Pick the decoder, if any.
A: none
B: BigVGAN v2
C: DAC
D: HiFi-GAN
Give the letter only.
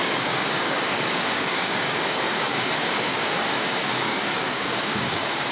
C